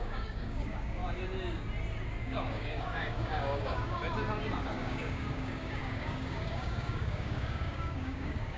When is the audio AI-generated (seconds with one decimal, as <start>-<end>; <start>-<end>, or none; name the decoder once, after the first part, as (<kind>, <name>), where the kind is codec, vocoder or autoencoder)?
0.0-1.0 (codec, DAC); 2.2-4.0; 4.6-8.6